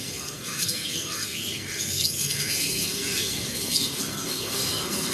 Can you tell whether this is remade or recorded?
remade